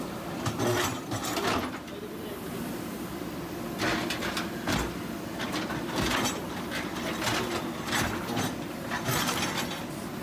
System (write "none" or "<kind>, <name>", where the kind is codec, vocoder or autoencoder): none